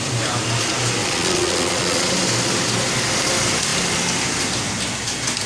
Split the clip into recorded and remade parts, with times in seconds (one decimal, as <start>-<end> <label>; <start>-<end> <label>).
0.0-1.0 recorded; 1.0-2.1 remade; 2.1-5.5 recorded